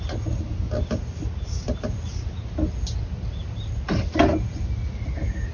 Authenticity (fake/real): real